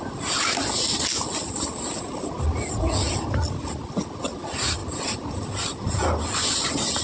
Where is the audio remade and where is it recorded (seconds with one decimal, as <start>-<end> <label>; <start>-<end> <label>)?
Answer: 0.0-7.0 recorded